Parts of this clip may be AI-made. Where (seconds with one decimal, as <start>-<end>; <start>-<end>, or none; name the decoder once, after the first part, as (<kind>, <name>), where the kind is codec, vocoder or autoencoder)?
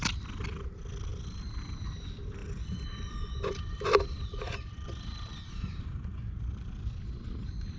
2.4-6.4 (vocoder, BigVGAN v2)